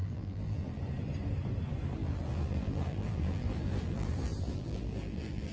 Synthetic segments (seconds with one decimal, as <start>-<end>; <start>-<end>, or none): 0.0-0.8; 2.0-5.5